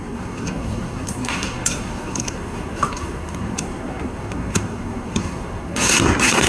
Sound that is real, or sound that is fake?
fake